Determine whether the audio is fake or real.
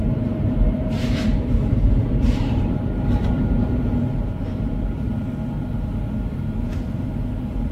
fake